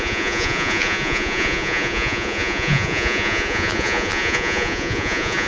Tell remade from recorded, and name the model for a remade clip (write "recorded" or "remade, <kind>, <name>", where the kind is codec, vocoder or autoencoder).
remade, vocoder, Vocos